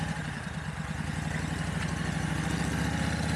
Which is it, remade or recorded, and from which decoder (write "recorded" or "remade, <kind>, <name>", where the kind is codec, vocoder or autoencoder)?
recorded